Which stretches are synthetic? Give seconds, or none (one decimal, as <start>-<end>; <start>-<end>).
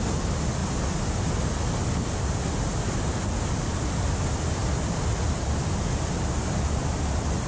none